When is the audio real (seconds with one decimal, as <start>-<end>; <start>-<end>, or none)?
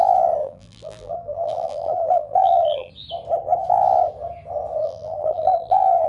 0.0-0.4; 2.9-4.8